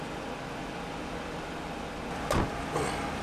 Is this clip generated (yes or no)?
no